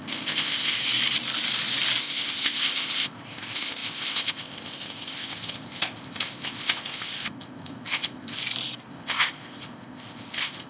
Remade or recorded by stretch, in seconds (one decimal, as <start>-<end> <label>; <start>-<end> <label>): 0.0-0.8 remade; 0.8-2.0 recorded; 2.0-8.4 remade; 8.4-8.9 recorded; 8.9-10.7 remade